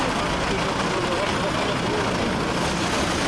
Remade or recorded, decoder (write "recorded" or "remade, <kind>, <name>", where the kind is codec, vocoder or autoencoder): recorded